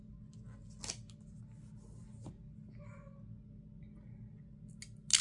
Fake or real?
real